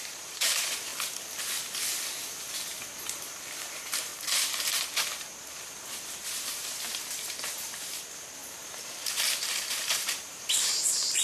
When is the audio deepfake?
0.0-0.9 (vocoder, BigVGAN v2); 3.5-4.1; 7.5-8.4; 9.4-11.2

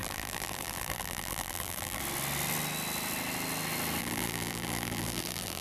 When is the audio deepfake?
0.0-2.0 (vocoder, BigVGAN v2); 4.0-5.6

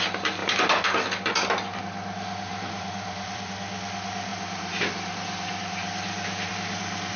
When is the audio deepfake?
2.5-3.5 (vocoder, BigVGAN v2); 4.3-6.5

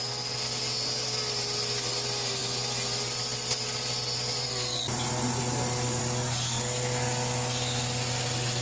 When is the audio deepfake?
none

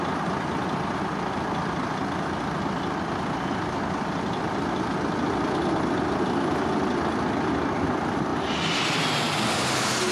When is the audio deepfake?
none